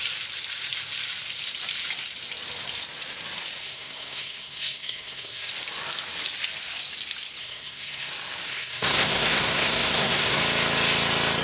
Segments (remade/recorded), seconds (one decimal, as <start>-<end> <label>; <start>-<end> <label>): 0.0-3.6 recorded; 3.6-5.5 remade; 5.5-7.4 recorded; 7.4-8.1 remade; 8.1-8.5 recorded; 8.5-10.4 remade; 10.4-11.4 recorded